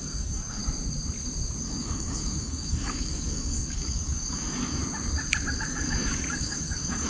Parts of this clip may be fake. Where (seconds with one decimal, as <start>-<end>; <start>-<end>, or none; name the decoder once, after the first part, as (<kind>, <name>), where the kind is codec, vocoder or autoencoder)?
0.0-0.6 (codec, DAC); 1.6-4.8; 5.5-7.1

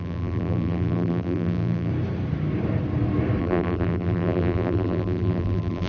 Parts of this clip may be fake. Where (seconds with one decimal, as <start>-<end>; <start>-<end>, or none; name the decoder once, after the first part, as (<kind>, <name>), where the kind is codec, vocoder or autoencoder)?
0.0-1.9 (vocoder, BigVGAN v2); 3.4-5.9

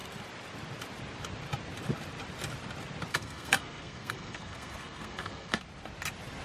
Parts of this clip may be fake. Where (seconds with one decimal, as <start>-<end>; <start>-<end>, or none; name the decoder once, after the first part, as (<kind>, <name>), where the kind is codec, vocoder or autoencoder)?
3.1-5.6 (codec, SNAC)

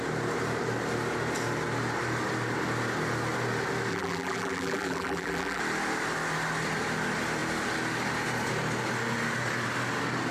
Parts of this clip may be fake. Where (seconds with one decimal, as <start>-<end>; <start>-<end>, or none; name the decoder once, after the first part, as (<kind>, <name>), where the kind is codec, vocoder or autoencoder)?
3.9-5.6 (vocoder, BigVGAN v2)

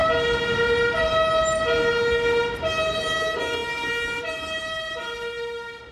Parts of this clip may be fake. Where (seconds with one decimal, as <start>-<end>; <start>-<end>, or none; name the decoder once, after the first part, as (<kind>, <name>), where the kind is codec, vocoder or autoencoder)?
none

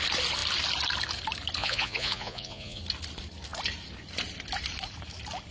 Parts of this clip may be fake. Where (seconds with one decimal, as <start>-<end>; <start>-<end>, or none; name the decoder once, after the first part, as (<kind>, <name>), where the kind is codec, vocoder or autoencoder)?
1.6-2.8 (vocoder, Vocos)

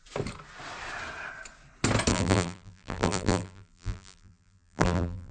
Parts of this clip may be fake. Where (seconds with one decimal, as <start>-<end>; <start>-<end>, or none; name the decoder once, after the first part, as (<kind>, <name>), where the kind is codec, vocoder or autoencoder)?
2.1-5.3 (vocoder, BigVGAN v2)

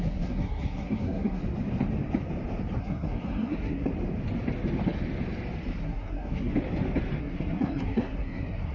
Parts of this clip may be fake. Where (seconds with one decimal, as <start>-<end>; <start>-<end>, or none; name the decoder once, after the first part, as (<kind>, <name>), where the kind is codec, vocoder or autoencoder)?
0.0-1.4 (codec, SNAC); 2.8-3.9; 5.8-6.5; 7.2-8.7